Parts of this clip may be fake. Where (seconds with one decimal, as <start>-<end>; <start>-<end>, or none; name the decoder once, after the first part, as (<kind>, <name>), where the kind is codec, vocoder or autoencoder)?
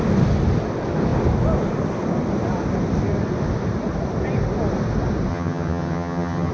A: 5.3-6.5 (vocoder, HiFi-GAN)